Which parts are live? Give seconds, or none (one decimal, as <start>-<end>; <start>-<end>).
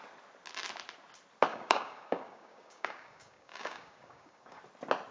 0.0-1.5; 4.6-5.1